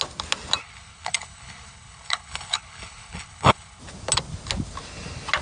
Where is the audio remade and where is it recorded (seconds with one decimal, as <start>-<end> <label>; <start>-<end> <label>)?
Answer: 0.0-0.6 recorded; 0.6-3.8 remade; 3.8-5.4 recorded